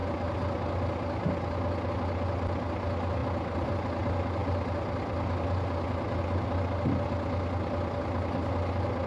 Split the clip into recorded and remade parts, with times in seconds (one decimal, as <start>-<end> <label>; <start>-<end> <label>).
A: 0.0-3.2 recorded; 3.2-3.7 remade; 3.7-9.1 recorded